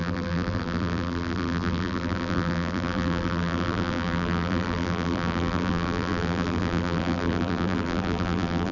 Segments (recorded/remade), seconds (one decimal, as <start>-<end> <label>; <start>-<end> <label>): 0.0-8.7 remade